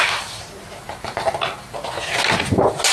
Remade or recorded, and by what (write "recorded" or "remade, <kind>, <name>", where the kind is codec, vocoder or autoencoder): recorded